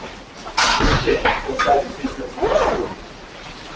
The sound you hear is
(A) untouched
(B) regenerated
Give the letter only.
A